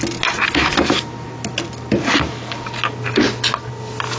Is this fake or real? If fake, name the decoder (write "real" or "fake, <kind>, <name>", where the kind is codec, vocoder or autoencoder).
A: real